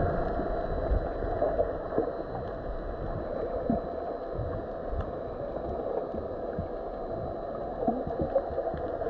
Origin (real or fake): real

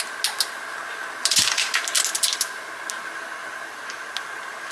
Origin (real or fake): real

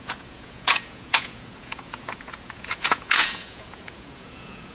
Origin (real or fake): fake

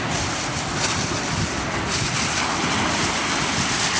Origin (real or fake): real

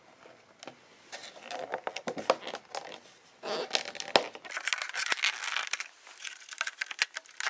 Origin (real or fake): real